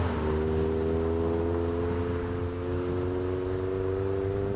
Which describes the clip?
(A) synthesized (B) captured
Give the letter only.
B